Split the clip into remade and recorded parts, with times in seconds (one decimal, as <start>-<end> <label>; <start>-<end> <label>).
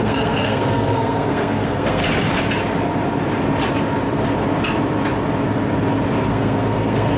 0.0-2.0 remade; 2.0-6.3 recorded; 6.3-7.2 remade